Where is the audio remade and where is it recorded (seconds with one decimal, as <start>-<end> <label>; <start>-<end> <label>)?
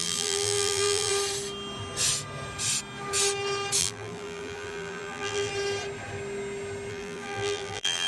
0.0-1.1 remade; 1.1-3.8 recorded; 3.8-5.5 remade; 5.5-6.9 recorded; 6.9-8.1 remade